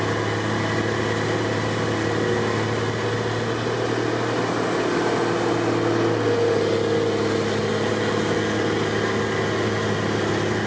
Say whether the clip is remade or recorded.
recorded